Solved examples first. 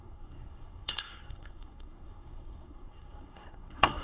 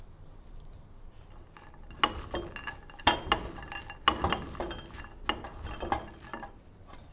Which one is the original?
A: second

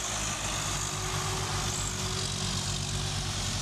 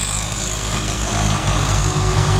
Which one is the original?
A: first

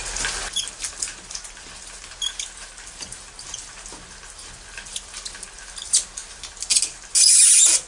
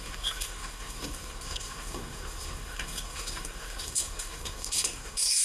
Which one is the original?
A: first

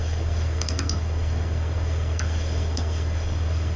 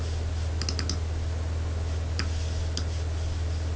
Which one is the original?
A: second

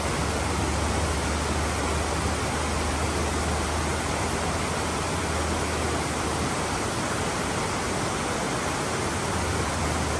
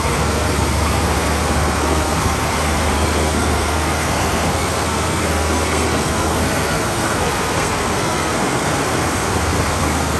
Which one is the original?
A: first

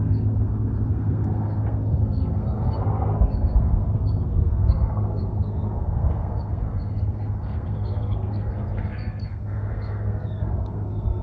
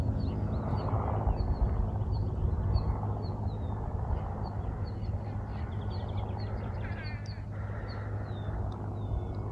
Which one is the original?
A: second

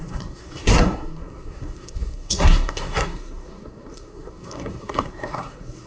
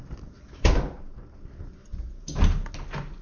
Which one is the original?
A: second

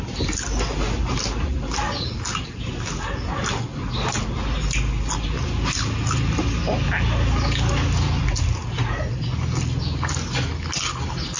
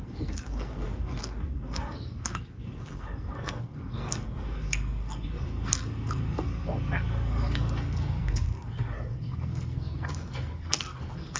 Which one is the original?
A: first